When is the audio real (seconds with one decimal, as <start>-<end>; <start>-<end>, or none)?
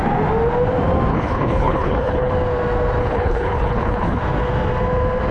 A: 0.0-1.1; 2.3-3.0; 4.2-5.3